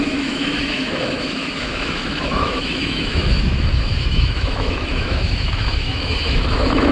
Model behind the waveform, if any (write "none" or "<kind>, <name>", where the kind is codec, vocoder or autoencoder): autoencoder, DAC-VAE